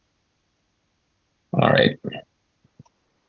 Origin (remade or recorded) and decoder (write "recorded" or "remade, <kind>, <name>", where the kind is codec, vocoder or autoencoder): recorded